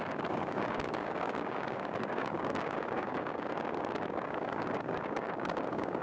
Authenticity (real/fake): fake